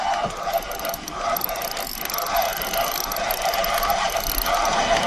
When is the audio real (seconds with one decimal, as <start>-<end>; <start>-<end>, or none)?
0.0-5.1